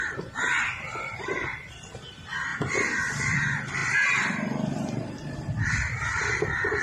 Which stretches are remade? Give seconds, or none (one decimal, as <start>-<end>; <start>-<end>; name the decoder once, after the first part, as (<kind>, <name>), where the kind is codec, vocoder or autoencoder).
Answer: 0.0-2.5 (vocoder, BigVGAN v2); 3.3-6.8

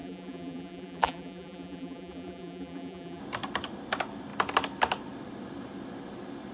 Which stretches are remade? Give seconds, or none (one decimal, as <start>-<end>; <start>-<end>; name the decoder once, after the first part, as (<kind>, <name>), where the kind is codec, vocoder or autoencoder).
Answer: 0.0-3.2 (vocoder, BigVGAN v2)

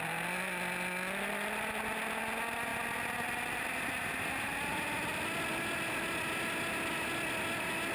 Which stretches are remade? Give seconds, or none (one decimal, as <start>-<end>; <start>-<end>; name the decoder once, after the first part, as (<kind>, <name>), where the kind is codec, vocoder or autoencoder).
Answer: none

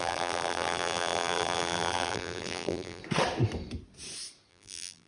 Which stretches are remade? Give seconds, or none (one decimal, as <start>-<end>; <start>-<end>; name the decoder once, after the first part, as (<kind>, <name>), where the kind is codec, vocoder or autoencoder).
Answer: 0.0-3.0 (vocoder, BigVGAN v2); 4.5-5.1

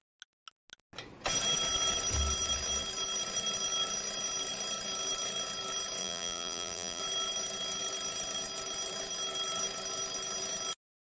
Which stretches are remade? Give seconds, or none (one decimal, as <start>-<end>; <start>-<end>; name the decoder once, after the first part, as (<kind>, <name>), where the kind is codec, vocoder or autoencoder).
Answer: 6.0-7.0 (vocoder, BigVGAN v2)

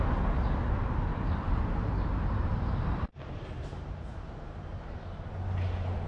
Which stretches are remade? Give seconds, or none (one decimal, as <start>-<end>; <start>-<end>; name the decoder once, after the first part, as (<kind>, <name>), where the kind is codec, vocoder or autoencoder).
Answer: 1.1-2.0 (vocoder, BigVGAN v2); 3.1-5.3

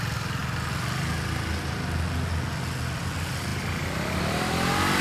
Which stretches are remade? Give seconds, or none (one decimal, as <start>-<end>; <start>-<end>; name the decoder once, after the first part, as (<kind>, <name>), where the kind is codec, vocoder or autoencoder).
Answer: none

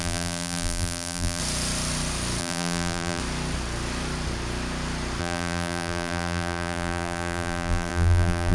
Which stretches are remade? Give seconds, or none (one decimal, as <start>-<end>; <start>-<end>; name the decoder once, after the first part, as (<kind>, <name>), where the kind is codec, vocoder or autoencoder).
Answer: 0.0-1.4 (vocoder, BigVGAN v2); 2.4-3.2; 5.2-8.5